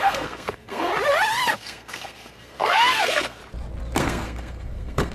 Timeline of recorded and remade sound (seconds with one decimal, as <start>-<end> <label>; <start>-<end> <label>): 0.0-0.9 remade; 0.9-1.5 recorded; 1.5-3.4 remade; 3.4-4.0 recorded; 4.0-5.1 remade